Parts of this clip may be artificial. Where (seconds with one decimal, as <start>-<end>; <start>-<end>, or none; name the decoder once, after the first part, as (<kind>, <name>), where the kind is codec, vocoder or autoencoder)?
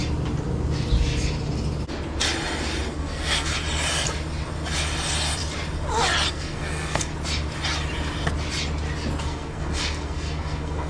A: 2.9-3.5 (codec, SNAC); 6.3-7.1; 9.2-10.9